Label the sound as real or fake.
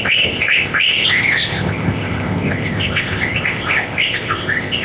fake